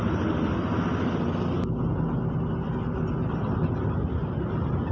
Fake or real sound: real